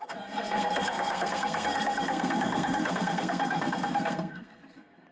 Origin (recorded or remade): remade